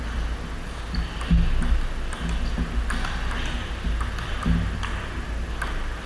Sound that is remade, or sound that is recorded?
recorded